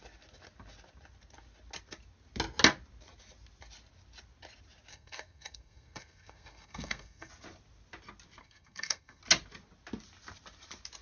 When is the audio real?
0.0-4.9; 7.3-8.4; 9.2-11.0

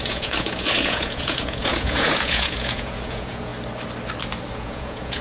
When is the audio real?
3.5-4.5

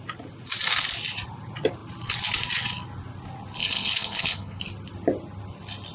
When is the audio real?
0.0-3.6; 4.6-5.9

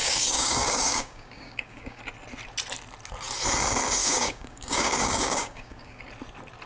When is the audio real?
2.0-4.0; 6.0-6.7